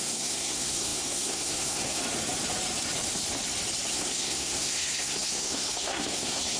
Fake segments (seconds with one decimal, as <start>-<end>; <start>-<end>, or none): 0.0-2.0; 3.9-6.6